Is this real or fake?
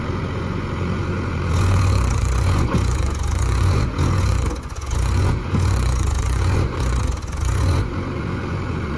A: fake